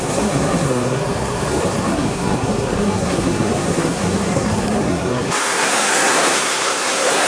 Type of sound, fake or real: fake